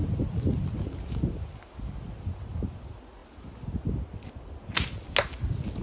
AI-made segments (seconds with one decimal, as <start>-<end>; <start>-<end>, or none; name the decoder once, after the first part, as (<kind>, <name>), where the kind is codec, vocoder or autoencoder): none

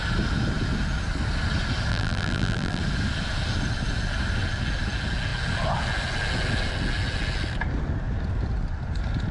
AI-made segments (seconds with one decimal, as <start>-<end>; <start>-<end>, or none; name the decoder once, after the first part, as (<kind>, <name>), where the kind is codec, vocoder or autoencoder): 1.9-2.8 (vocoder, BigVGAN v2)

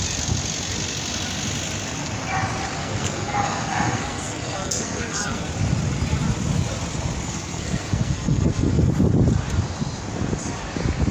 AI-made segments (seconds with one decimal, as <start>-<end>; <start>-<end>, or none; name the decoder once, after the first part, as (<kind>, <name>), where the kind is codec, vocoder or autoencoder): 2.8-5.5 (codec, SNAC); 7.3-8.9

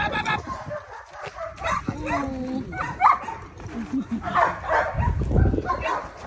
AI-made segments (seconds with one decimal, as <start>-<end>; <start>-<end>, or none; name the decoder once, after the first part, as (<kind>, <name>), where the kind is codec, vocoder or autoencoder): none

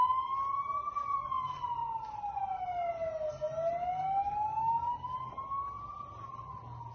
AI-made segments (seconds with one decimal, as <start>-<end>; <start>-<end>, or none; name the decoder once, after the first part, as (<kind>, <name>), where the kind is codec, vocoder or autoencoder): none

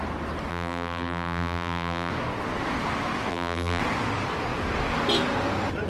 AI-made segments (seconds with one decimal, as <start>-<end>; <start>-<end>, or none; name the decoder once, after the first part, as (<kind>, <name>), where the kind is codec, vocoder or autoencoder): 0.5-2.1 (vocoder, BigVGAN v2); 3.3-3.8

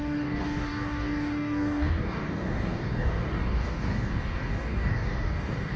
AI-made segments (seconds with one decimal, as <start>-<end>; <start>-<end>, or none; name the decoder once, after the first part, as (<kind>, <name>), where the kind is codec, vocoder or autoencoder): 0.0-5.8 (codec, DAC)